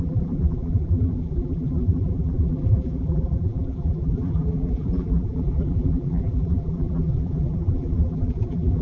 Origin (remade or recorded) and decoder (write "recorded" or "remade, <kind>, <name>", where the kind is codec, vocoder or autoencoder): remade, vocoder, BigVGAN v2